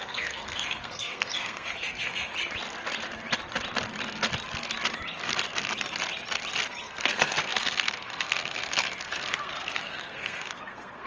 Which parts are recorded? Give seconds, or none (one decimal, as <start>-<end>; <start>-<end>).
2.3-6.8